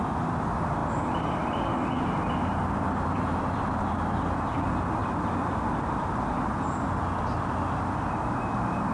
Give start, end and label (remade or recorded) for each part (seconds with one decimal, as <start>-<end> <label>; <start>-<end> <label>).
0.0-0.8 recorded; 0.8-3.4 remade; 3.4-5.0 recorded; 5.0-8.9 remade